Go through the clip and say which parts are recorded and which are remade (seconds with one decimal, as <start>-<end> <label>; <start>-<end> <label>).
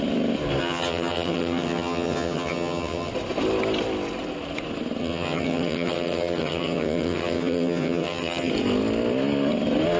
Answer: 0.0-0.6 recorded; 0.6-3.1 remade; 3.1-5.0 recorded; 5.0-8.5 remade; 8.5-10.0 recorded